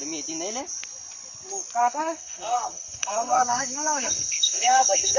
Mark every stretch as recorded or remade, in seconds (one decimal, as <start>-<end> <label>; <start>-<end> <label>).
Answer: 0.0-1.8 recorded; 1.8-5.2 remade